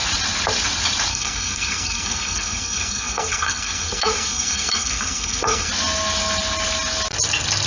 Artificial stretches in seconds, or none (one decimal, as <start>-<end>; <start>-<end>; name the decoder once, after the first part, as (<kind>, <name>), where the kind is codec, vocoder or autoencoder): 1.1-5.7 (codec, SNAC)